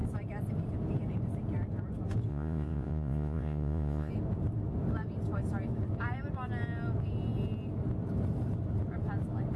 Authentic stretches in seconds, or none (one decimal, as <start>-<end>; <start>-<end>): 0.0-2.3; 4.1-9.6